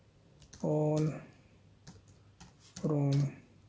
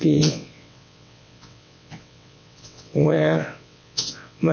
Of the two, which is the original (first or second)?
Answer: first